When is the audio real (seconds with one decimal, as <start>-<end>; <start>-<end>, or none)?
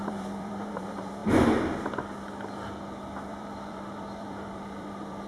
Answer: 1.2-3.3